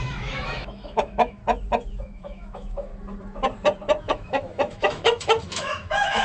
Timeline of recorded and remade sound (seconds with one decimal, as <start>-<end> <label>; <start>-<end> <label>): 0.0-1.4 remade; 1.4-2.0 recorded; 2.0-2.9 remade; 2.9-4.0 recorded; 4.0-6.2 remade